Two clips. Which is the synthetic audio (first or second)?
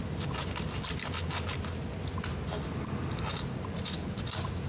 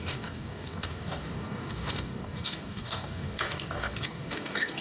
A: second